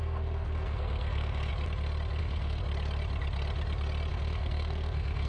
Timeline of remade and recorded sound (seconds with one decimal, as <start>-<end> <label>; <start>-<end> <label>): 0.0-1.5 remade; 1.5-2.2 recorded; 2.2-2.6 remade; 2.6-4.1 recorded; 4.1-5.3 remade